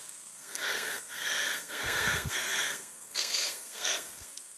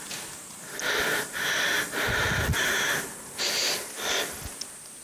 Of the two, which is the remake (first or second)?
first